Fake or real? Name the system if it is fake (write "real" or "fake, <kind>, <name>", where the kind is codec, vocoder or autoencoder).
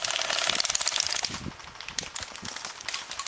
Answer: real